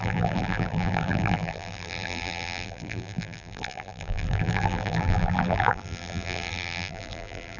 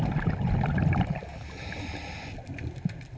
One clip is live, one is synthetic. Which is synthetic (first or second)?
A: first